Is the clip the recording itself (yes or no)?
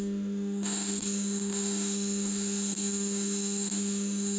no